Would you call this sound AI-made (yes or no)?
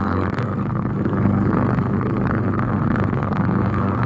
yes